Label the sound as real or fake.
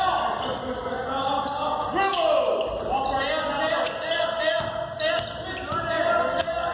real